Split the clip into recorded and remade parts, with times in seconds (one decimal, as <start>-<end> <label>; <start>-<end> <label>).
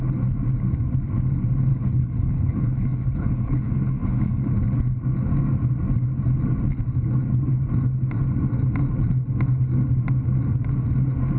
0.0-1.7 recorded; 1.7-4.5 remade; 4.5-11.4 recorded